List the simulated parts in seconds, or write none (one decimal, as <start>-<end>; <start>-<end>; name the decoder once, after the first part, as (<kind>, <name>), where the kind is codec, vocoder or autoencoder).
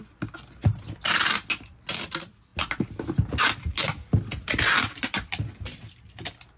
none